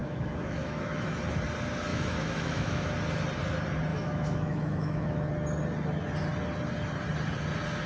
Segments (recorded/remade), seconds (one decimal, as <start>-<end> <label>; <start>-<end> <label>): 0.0-1.2 remade; 1.2-1.9 recorded; 1.9-2.9 remade; 2.9-3.9 recorded; 3.9-5.3 remade; 5.3-7.9 recorded